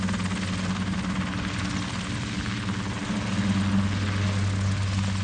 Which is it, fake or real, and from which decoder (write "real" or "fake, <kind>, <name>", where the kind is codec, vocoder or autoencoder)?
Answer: real